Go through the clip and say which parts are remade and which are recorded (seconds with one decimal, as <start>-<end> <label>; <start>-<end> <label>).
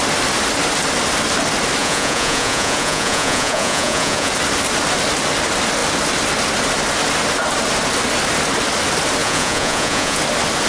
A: 0.0-1.8 recorded; 1.8-4.3 remade; 4.3-9.2 recorded; 9.2-10.2 remade; 10.2-10.7 recorded